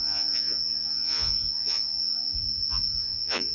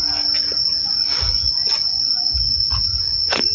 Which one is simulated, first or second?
first